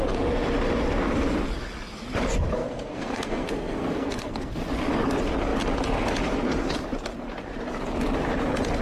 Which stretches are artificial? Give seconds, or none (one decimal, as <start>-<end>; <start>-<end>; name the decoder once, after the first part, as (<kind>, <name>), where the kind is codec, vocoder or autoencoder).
2.6-4.5 (codec, SNAC)